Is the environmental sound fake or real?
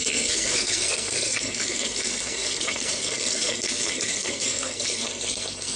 fake